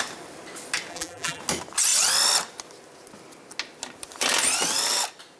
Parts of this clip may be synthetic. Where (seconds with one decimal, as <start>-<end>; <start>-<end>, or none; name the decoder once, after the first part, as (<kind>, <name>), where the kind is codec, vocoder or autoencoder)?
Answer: 0.9-1.4 (vocoder, BigVGAN v2)